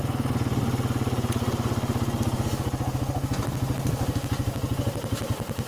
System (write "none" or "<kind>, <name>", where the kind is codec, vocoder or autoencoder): none